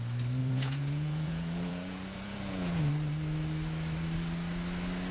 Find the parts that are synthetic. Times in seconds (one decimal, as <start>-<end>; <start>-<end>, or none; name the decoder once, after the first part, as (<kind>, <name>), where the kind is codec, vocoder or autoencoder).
0.4-2.8 (vocoder, Vocos)

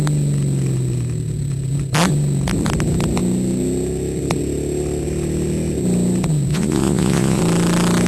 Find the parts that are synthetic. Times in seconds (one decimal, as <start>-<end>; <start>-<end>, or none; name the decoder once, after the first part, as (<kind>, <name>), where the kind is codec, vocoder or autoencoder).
6.5-7.4 (vocoder, Vocos)

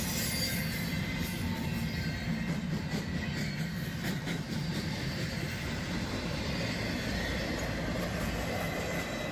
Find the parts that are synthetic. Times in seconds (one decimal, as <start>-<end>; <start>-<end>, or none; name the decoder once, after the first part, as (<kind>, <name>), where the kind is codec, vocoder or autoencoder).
4.0-6.4 (vocoder, BigVGAN v2)

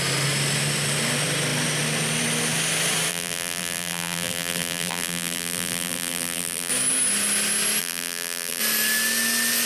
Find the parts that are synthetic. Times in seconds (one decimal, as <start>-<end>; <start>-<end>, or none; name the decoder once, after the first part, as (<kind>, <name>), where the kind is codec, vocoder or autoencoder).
3.1-6.7 (vocoder, BigVGAN v2); 7.8-8.6

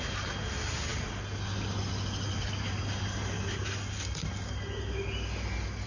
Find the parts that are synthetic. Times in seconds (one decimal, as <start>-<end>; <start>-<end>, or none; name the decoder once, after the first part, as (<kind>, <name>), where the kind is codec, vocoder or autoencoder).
none

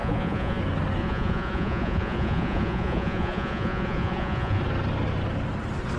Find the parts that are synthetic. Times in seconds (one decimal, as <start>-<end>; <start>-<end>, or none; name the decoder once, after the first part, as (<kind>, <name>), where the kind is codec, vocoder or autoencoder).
0.0-0.6 (vocoder, Vocos); 1.0-4.6